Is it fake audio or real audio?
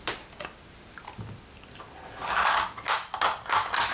real